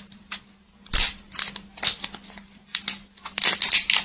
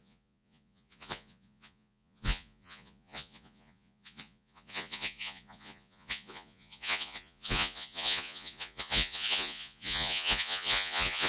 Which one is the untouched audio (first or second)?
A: first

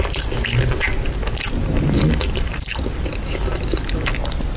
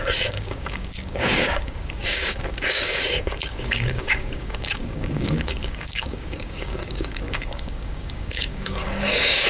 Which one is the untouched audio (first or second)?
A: first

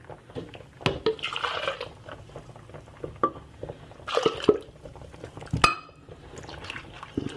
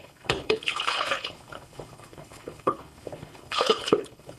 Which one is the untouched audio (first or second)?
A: first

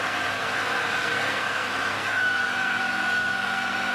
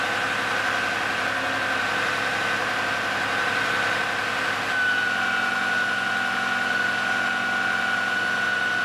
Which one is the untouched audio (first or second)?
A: second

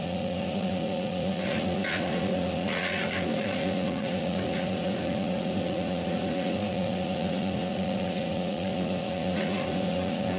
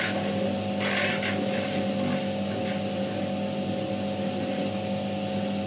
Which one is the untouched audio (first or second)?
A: second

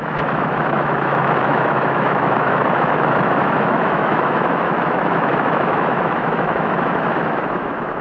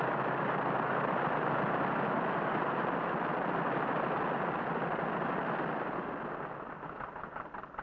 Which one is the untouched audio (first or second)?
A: second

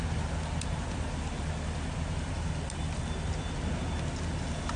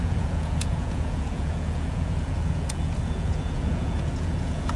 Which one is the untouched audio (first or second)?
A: first